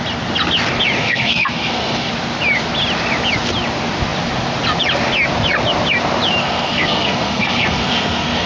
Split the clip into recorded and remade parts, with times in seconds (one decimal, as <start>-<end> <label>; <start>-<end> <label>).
0.0-1.0 recorded; 1.0-2.1 remade; 2.1-6.4 recorded; 6.4-8.5 remade